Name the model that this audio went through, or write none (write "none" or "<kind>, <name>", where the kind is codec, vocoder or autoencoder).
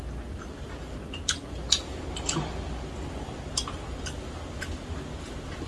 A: none